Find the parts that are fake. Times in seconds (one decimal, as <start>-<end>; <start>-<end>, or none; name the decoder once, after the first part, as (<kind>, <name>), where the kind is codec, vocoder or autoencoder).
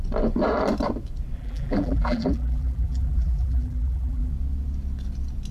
1.4-4.3 (vocoder, BigVGAN v2)